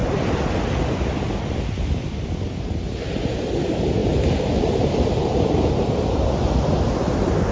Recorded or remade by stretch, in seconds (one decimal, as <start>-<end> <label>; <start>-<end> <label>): 0.0-4.0 recorded; 4.0-6.2 remade; 6.2-7.5 recorded

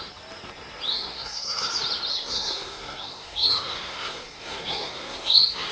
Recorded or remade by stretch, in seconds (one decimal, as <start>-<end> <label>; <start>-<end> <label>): 0.0-0.9 recorded; 0.9-1.7 remade; 1.7-2.1 recorded; 2.1-5.7 remade

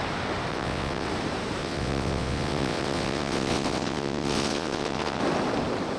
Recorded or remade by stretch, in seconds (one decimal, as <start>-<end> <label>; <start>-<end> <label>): 0.0-0.5 recorded; 0.5-1.1 remade; 1.1-1.6 recorded; 1.6-5.2 remade; 5.2-6.0 recorded

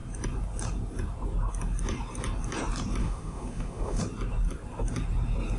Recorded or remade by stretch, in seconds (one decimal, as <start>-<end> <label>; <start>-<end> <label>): 0.0-3.0 recorded; 3.0-4.0 remade; 4.0-5.6 recorded

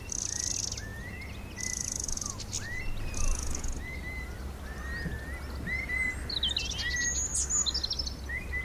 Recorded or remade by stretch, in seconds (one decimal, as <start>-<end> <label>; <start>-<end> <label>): 0.0-8.6 recorded

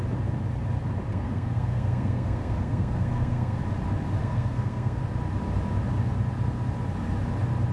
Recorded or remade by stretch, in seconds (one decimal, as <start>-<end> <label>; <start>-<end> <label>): 0.0-1.1 recorded; 1.1-3.6 remade; 3.6-4.2 recorded; 4.2-5.0 remade; 5.0-7.7 recorded